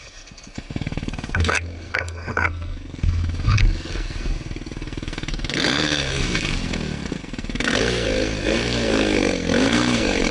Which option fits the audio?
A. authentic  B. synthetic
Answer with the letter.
B